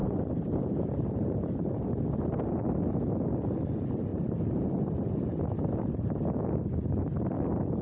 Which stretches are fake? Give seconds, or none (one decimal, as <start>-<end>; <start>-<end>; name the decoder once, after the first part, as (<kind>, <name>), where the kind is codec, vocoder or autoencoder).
0.0-1.5 (vocoder, BigVGAN v2); 4.1-4.6